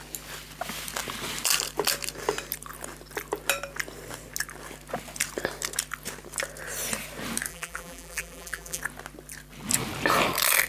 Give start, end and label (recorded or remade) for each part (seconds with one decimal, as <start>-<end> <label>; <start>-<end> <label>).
0.0-7.5 recorded; 7.5-8.8 remade; 8.8-10.7 recorded